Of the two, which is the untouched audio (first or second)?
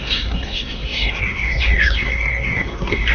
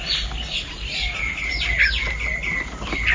second